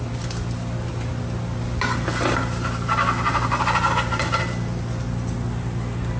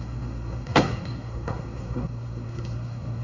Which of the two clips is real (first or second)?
first